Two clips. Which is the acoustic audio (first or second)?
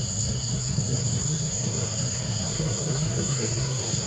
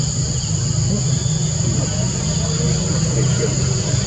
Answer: second